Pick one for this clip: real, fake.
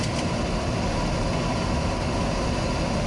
real